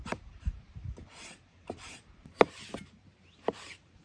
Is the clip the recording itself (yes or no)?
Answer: no